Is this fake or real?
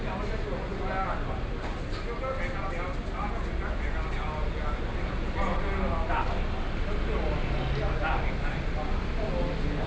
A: real